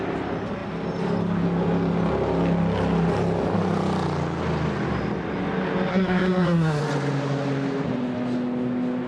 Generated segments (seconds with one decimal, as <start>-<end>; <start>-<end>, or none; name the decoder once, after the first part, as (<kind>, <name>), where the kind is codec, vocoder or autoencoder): 5.9-6.8 (codec, SNAC)